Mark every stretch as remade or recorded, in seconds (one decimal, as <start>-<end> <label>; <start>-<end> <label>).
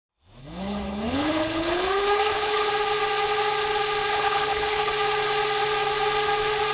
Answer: 0.0-0.4 recorded; 0.4-2.7 remade; 2.7-4.1 recorded; 4.1-4.9 remade; 4.9-6.7 recorded